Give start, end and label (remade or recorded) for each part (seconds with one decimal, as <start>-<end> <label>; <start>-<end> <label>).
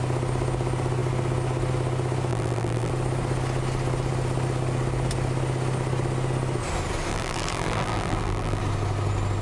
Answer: 0.0-2.3 recorded; 2.3-2.9 remade; 2.9-7.1 recorded; 7.1-8.6 remade; 8.6-9.4 recorded